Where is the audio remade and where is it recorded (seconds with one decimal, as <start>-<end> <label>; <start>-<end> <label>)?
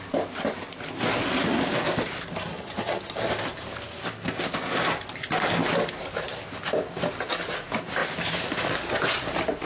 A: 0.0-2.5 recorded; 2.5-3.3 remade; 3.3-9.7 recorded